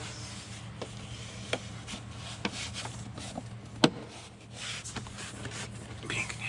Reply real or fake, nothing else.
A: real